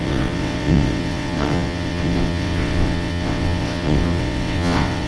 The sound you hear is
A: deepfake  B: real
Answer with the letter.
A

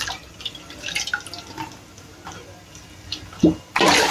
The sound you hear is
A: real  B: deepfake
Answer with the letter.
A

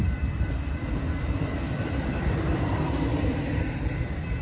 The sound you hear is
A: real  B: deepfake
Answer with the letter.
B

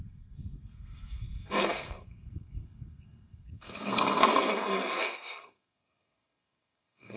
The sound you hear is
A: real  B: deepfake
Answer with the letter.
B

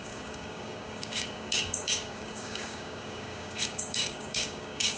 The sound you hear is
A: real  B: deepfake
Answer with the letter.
B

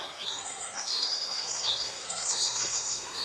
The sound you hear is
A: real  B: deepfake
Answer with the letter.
B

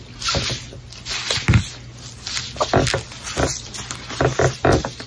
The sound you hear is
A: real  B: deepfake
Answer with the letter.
A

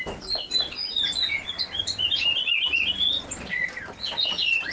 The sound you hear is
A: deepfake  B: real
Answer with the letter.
B